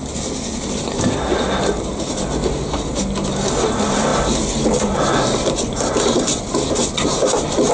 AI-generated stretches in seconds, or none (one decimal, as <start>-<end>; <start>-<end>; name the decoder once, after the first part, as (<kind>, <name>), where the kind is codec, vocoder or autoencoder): none